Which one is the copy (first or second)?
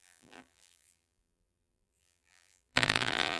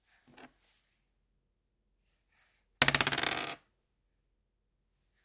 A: first